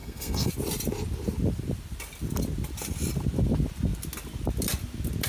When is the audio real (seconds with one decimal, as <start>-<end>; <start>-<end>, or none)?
0.5-5.3